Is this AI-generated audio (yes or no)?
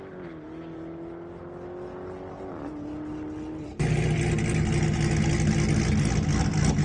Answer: no